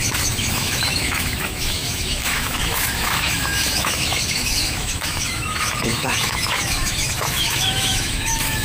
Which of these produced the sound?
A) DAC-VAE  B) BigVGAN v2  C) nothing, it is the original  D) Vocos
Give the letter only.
A